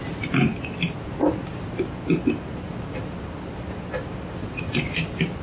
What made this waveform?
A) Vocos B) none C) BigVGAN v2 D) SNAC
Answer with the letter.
B